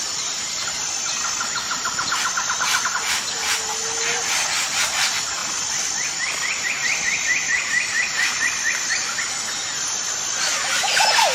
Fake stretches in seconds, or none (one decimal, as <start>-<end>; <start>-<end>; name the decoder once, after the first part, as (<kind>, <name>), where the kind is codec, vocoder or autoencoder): none